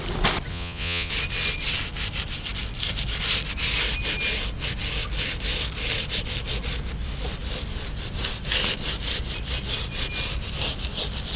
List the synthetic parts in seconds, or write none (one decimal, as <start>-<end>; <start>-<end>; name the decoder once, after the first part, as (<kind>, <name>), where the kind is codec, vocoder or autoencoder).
0.5-1.1 (vocoder, Vocos)